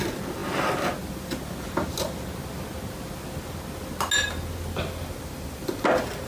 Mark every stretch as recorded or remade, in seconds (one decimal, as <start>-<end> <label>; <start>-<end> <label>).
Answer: 0.0-6.3 recorded